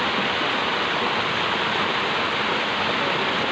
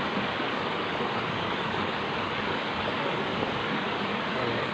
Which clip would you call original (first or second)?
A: first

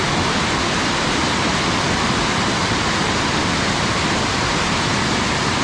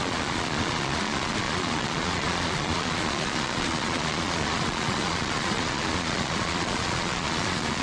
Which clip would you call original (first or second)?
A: first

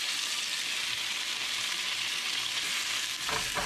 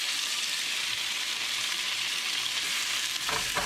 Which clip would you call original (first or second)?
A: first